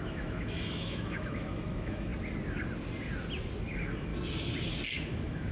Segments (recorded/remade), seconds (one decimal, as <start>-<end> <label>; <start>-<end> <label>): 0.0-2.1 remade; 2.1-3.6 recorded; 3.6-4.1 remade; 4.1-4.9 recorded; 4.9-5.5 remade